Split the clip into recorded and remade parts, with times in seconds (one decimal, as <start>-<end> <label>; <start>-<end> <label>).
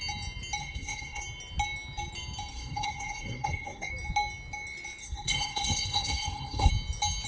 0.0-0.6 recorded; 0.6-1.2 remade; 1.2-2.5 recorded; 2.5-3.9 remade; 3.9-5.0 recorded; 5.0-6.7 remade; 6.7-7.3 recorded